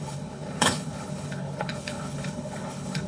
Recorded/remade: remade